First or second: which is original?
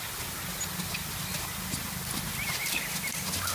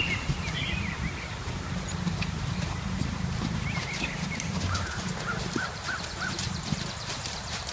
first